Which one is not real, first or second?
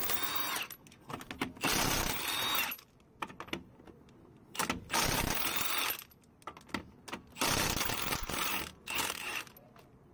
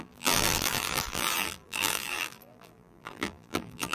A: second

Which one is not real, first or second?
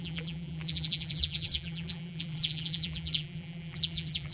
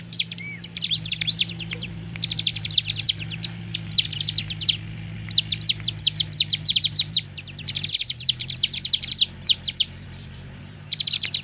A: first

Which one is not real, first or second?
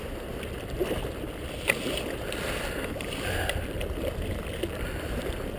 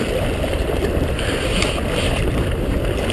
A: first